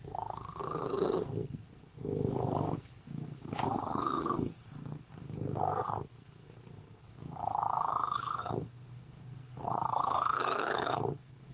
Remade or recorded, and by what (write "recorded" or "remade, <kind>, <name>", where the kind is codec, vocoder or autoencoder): remade, codec, SNAC